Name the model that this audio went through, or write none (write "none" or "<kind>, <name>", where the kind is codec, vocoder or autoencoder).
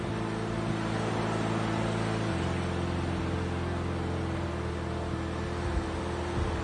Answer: none